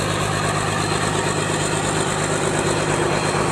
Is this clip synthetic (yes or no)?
no